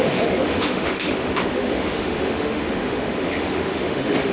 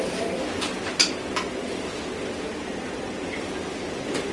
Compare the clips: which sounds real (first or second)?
second